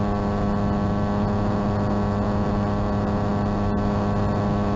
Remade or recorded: recorded